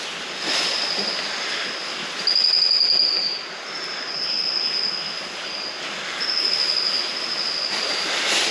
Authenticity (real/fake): real